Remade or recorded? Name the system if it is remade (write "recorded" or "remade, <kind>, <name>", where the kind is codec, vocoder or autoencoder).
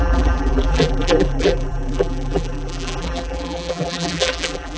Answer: remade, vocoder, BigVGAN v2